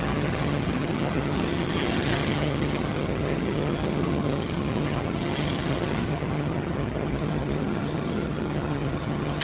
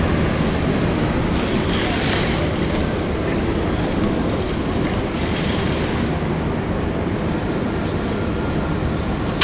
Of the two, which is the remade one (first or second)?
first